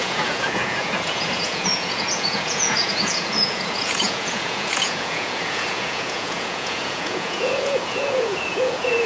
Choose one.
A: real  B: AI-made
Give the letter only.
B